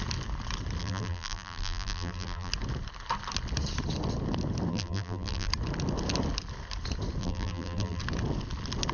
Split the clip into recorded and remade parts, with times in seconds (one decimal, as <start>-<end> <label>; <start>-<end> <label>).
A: 0.0-0.8 recorded; 0.8-2.5 remade; 2.5-4.7 recorded; 4.7-5.5 remade; 5.5-7.2 recorded; 7.2-8.0 remade; 8.0-8.9 recorded